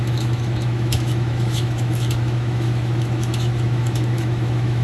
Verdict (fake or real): fake